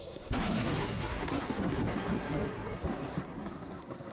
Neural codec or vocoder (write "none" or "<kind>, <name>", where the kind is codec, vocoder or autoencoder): codec, SNAC